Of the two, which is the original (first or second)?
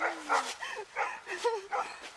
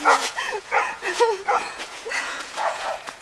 first